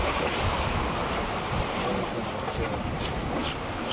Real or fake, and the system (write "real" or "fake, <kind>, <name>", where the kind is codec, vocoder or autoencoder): real